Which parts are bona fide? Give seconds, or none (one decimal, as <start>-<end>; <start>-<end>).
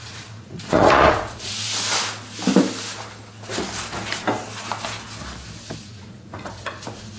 1.5-5.8